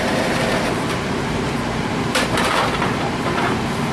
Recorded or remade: remade